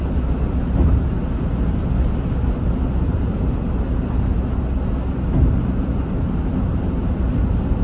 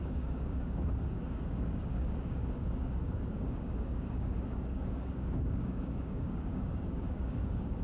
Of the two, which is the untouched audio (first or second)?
first